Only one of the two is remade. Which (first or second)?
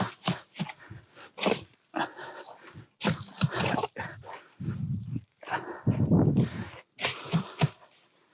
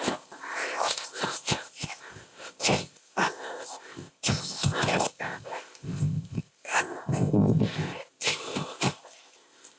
second